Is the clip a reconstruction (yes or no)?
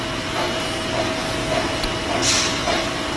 no